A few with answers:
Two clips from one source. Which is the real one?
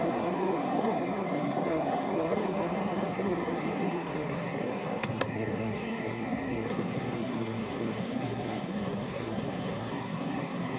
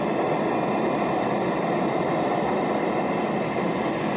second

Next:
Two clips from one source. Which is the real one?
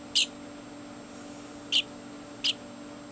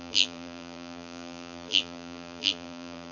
first